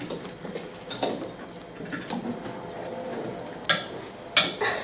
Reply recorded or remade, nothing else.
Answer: recorded